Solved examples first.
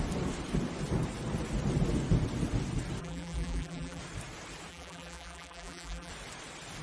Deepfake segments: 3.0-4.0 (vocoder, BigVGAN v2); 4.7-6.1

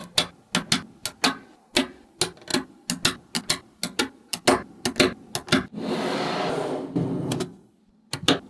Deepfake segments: none